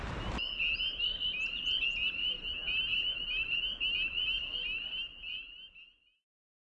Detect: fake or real real